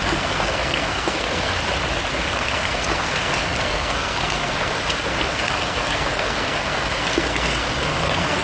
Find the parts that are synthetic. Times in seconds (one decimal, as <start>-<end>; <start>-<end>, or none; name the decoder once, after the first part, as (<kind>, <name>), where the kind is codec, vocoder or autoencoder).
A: 0.0-1.5 (codec, SNAC); 2.1-8.4

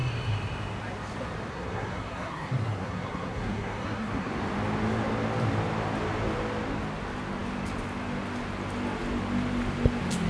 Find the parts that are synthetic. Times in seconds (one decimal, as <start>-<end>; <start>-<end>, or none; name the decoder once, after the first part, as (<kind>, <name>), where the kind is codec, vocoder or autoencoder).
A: 1.5-4.3 (codec, SNAC)

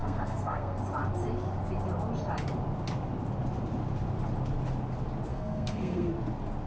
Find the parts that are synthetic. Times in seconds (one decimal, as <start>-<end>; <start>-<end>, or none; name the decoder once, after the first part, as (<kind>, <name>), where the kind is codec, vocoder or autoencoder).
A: 0.0-0.8 (codec, SNAC); 5.3-6.1

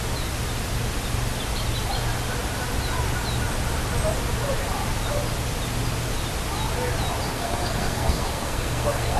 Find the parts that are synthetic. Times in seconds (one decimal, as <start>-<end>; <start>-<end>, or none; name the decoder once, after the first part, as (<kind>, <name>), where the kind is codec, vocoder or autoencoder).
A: 7.3-9.2 (codec, SNAC)

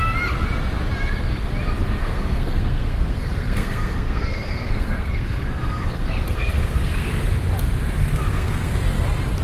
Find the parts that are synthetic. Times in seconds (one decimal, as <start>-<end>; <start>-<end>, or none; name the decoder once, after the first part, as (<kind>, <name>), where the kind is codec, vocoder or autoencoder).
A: 2.0-7.1 (codec, SNAC); 8.0-8.7